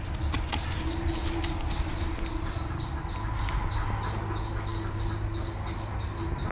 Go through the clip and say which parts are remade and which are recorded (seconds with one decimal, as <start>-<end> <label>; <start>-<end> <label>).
0.0-6.5 recorded

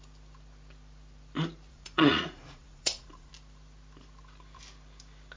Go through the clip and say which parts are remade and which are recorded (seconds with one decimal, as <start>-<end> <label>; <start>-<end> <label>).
0.0-1.7 recorded; 1.7-3.3 remade; 3.3-5.4 recorded

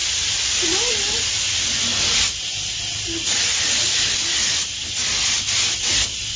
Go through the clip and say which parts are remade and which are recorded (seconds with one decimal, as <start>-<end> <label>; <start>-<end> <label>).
0.0-6.4 recorded